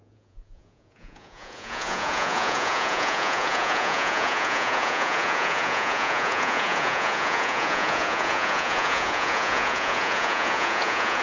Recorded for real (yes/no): no